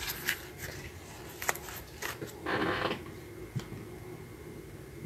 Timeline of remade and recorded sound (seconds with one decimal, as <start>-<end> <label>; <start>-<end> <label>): 0.0-5.1 recorded